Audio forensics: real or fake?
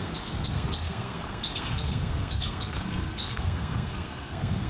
fake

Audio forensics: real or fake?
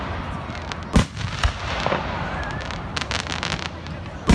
real